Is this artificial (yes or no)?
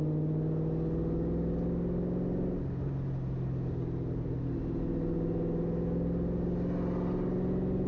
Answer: no